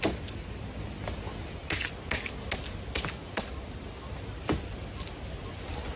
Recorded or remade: recorded